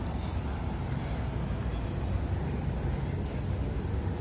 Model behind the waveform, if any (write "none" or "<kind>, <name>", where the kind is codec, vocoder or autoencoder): none